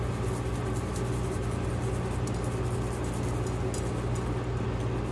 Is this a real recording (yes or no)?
yes